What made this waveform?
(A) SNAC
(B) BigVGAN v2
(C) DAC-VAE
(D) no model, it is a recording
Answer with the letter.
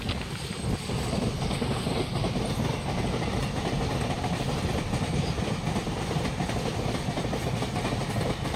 D